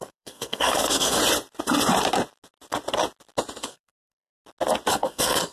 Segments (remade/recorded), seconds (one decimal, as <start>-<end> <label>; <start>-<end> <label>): 0.0-1.2 remade; 1.2-3.6 recorded; 3.6-4.3 remade; 4.3-4.9 recorded; 4.9-5.5 remade